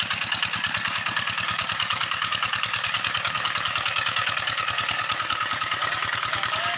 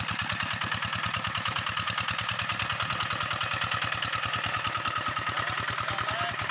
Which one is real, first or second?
second